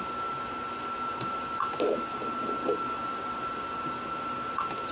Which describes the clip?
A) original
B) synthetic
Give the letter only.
A